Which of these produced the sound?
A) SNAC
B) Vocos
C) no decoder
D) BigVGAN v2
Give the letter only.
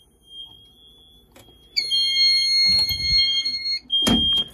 C